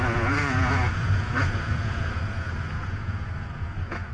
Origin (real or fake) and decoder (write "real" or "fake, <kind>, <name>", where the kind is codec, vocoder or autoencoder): fake, vocoder, Vocos